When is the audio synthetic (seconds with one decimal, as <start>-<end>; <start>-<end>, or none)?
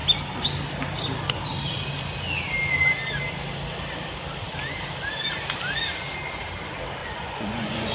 7.0-7.9